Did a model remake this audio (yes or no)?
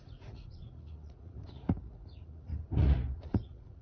yes